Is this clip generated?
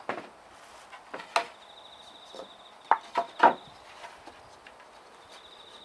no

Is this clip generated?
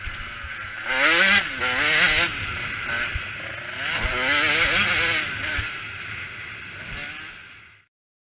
no